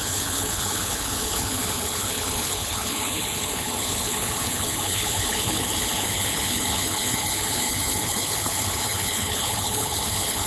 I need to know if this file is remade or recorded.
remade